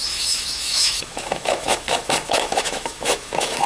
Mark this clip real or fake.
fake